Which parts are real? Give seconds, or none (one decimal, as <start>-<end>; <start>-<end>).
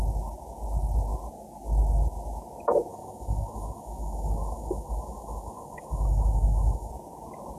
0.0-2.9; 6.9-7.6